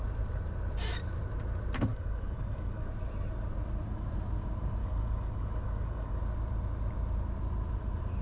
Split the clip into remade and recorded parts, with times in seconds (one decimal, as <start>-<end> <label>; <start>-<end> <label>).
0.0-1.9 recorded; 1.9-2.9 remade; 2.9-4.8 recorded; 4.8-6.2 remade; 6.2-8.2 recorded